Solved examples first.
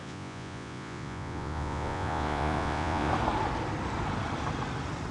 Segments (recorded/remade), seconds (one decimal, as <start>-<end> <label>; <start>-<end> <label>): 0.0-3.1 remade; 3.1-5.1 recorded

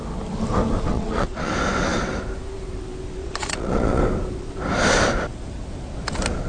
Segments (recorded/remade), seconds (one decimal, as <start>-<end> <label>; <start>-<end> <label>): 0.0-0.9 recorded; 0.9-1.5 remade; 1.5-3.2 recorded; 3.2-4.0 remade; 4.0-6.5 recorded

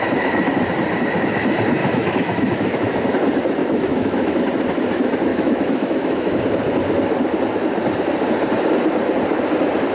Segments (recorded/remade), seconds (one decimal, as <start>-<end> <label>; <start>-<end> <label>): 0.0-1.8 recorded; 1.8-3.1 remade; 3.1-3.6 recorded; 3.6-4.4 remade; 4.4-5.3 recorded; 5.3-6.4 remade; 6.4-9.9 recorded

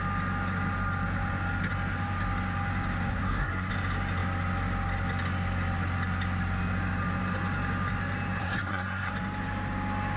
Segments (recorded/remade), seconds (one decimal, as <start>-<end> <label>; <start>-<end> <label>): 0.0-3.1 recorded; 3.1-3.7 remade; 3.7-8.4 recorded; 8.4-9.1 remade; 9.1-10.2 recorded

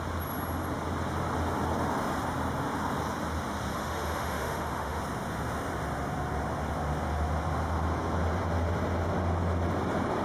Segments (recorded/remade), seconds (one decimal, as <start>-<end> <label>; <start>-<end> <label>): 0.0-3.7 recorded; 3.7-5.0 remade; 5.0-10.2 recorded

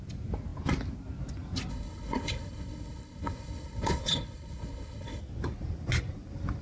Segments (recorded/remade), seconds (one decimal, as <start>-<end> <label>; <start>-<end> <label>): 0.0-1.7 recorded; 1.7-5.2 remade; 5.2-6.6 recorded